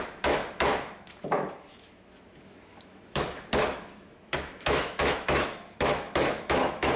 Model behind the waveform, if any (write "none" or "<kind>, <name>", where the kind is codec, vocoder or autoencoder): autoencoder, DAC-VAE